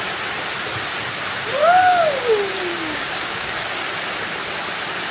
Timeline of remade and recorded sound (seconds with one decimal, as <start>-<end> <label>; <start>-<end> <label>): 0.0-1.6 recorded; 1.6-2.3 remade; 2.3-2.7 recorded; 2.7-3.5 remade; 3.5-5.1 recorded